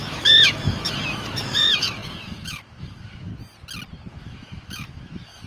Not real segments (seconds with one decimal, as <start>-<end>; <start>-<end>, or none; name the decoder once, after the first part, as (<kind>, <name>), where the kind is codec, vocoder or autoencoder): 0.0-3.3 (autoencoder, DAC-VAE); 4.1-5.5

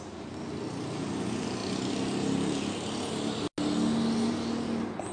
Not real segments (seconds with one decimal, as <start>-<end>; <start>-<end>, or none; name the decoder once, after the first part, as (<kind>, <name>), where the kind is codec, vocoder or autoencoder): none

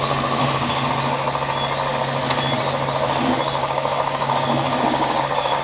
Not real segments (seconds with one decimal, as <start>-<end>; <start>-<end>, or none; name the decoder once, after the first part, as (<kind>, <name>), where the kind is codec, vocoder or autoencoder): 0.4-0.9 (codec, DAC); 3.6-5.6

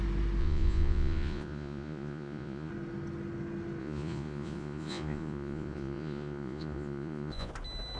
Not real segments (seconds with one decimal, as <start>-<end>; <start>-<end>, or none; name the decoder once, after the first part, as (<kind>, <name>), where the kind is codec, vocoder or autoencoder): 0.4-2.7 (vocoder, Vocos); 3.8-7.5

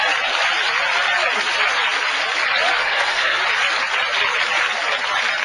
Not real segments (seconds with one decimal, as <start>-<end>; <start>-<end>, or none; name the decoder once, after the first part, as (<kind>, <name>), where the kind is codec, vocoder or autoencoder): 2.8-3.4 (codec, SNAC)